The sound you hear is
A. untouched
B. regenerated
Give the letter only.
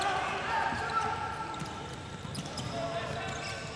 B